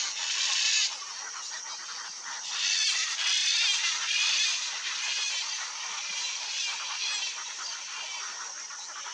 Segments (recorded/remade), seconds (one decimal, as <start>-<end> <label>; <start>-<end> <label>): 0.0-9.1 recorded